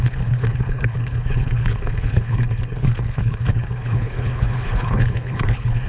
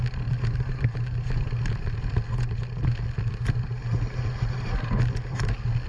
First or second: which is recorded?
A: second